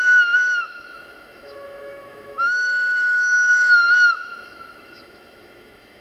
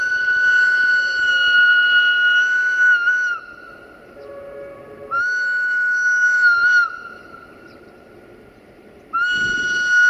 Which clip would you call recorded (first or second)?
second